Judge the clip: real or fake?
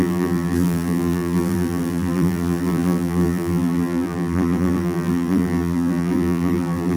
fake